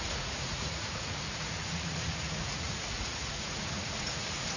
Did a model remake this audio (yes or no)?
yes